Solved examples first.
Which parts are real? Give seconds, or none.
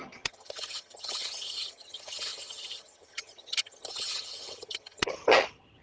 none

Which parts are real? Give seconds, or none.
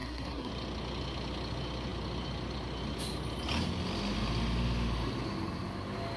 0.5-6.2